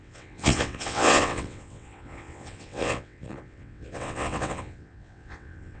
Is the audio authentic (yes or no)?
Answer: no